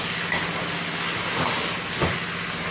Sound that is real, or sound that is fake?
real